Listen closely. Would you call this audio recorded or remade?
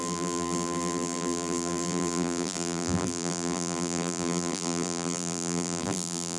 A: remade